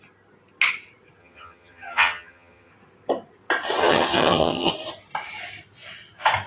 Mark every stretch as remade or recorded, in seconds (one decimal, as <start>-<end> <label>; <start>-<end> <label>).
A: 0.0-1.2 recorded; 1.2-2.7 remade; 2.7-3.8 recorded; 3.8-4.7 remade; 4.7-6.5 recorded